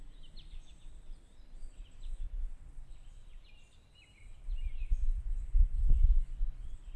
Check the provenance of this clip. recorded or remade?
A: remade